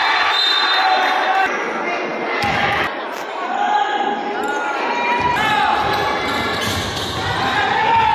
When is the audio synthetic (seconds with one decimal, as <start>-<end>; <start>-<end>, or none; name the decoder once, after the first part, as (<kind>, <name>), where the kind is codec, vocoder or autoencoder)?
none